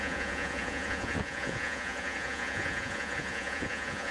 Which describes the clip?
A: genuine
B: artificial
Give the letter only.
B